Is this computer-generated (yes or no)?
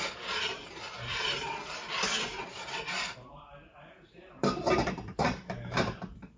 yes